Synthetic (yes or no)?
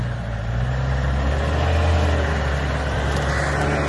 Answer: no